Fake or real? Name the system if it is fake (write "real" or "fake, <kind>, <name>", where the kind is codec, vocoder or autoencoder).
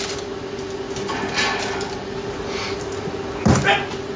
real